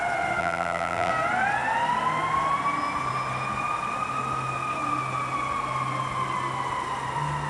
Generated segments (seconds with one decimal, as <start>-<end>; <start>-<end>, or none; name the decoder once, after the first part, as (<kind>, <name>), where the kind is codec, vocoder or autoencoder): 0.4-1.1 (vocoder, BigVGAN v2)